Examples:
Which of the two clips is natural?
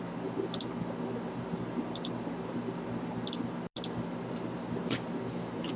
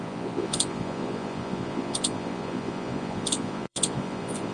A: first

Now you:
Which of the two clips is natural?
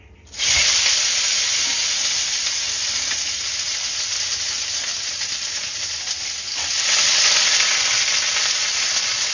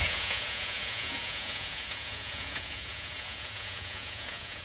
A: first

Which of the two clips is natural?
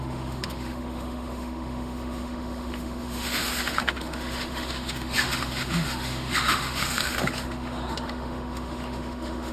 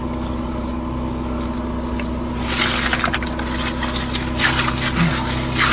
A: second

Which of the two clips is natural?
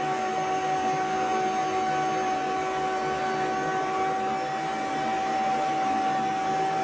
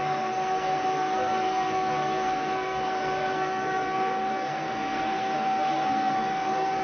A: first